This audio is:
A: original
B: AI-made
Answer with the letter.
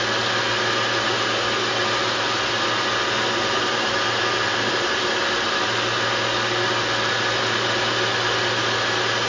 A